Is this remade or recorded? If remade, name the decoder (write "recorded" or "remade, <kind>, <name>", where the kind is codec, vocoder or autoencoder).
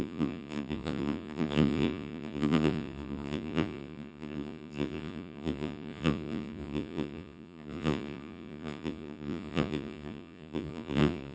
remade, vocoder, Vocos